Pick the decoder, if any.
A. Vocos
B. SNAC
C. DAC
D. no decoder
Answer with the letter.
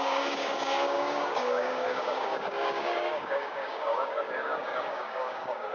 C